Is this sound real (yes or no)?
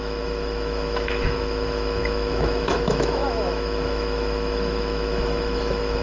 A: no